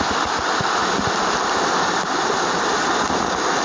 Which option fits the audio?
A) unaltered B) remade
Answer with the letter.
A